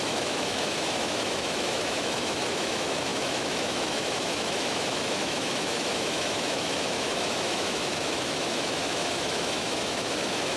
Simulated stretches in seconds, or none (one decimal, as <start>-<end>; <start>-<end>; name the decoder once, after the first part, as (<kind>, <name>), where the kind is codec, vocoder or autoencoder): 0.0-10.6 (autoencoder, DAC-VAE)